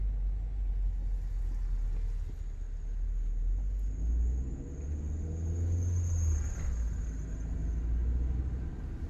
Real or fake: real